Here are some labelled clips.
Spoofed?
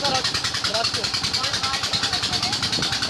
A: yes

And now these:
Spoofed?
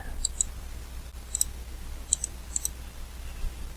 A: no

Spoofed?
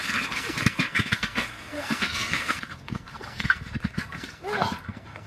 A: yes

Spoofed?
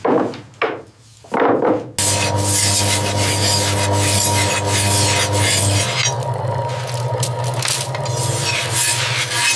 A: no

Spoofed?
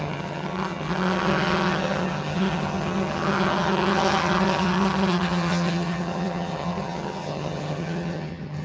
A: yes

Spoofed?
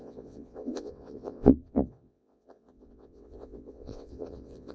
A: yes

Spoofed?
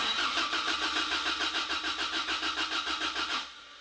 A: no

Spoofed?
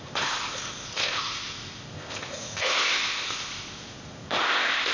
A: yes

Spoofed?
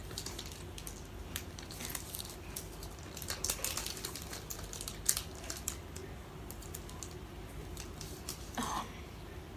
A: no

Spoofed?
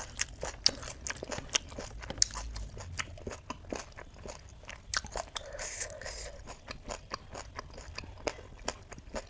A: no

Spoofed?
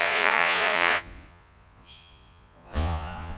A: yes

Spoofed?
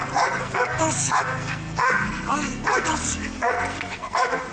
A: yes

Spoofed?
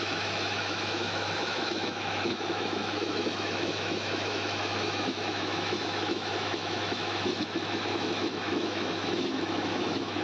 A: yes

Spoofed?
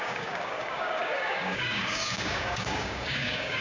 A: yes